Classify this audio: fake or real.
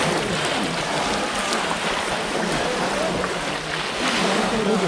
real